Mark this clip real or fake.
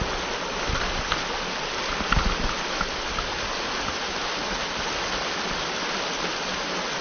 real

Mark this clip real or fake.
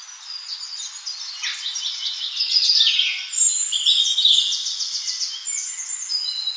real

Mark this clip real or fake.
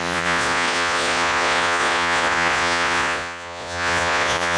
fake